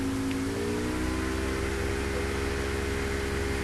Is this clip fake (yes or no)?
no